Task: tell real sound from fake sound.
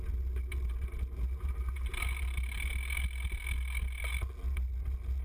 real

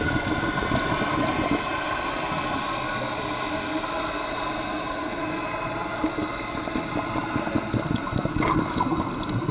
real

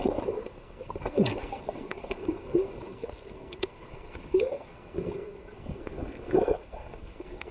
fake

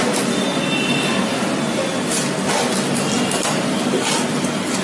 real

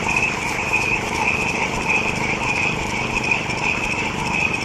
real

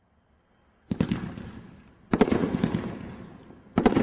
real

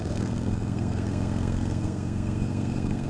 fake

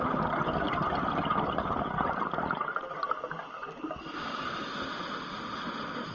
real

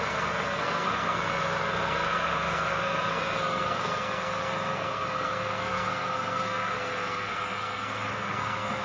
fake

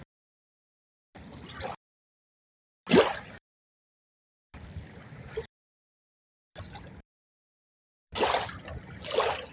real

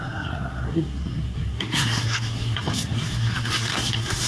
fake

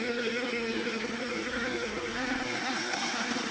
fake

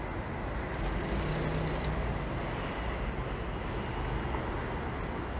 real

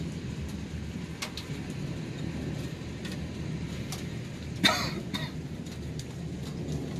real